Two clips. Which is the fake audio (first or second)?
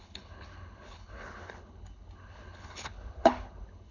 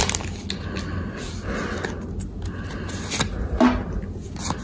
first